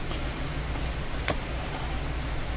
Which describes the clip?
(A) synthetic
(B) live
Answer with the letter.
B